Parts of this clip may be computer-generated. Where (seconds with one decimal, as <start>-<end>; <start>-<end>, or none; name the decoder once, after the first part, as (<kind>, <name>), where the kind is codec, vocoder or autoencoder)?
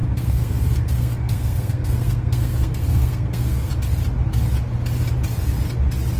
0.0-3.7 (codec, SNAC)